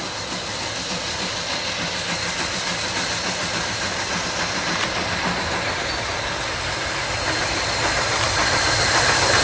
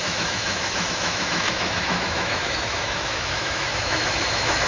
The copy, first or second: second